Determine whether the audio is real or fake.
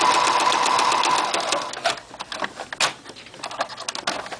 real